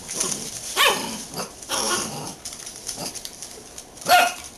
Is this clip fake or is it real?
fake